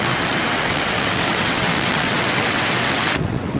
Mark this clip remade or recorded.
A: remade